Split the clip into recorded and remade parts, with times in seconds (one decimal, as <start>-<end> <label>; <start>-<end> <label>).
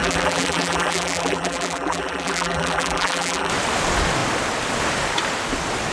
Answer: 0.0-3.5 remade; 3.5-5.9 recorded